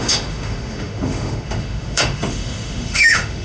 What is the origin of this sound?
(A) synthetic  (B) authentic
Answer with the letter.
A